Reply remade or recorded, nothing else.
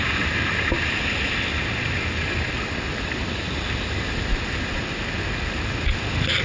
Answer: recorded